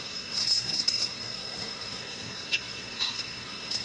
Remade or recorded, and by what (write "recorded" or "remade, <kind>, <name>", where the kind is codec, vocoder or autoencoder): remade, codec, SNAC